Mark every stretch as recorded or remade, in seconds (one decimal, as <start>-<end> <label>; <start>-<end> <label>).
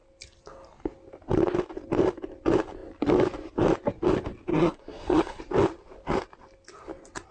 0.0-4.5 recorded; 4.5-5.4 remade; 5.4-7.3 recorded